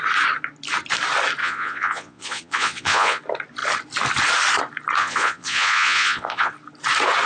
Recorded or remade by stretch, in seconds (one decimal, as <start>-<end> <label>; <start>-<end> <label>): 0.0-1.4 recorded; 1.4-3.2 remade; 3.2-5.0 recorded; 5.0-6.5 remade; 6.5-7.3 recorded